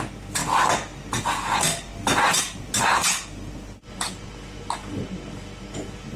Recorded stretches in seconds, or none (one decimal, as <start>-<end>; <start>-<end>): 0.0-6.2